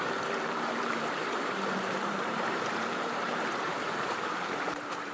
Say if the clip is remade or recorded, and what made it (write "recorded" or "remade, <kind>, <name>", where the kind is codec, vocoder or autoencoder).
remade, vocoder, BigVGAN v2